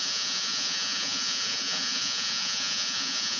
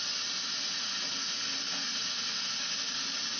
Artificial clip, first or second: first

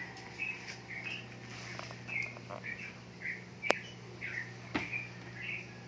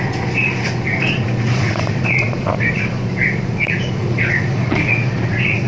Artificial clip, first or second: second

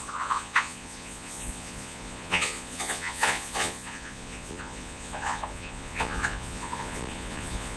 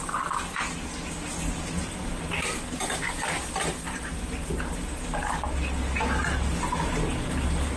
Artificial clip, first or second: first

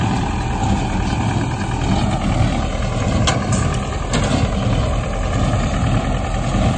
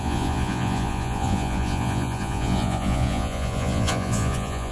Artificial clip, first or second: second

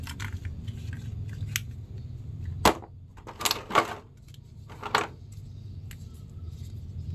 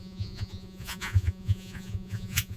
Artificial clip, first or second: second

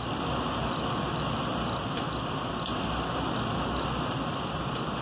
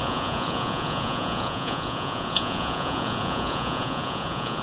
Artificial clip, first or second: second